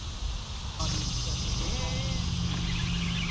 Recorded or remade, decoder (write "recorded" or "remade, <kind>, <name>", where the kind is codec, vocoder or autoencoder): recorded